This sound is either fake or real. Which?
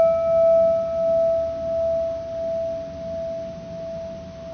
real